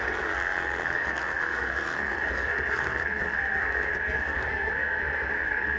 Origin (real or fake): fake